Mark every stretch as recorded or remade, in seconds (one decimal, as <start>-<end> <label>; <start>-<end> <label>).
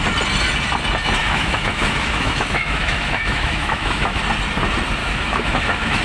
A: 0.0-1.2 recorded; 1.2-4.2 remade; 4.2-5.0 recorded; 5.0-6.0 remade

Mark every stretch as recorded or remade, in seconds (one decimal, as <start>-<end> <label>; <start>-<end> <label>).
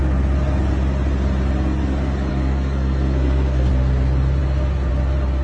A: 0.0-2.3 recorded; 2.3-3.7 remade; 3.7-5.4 recorded